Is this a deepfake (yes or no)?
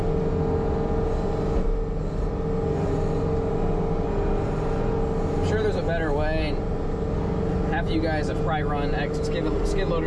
no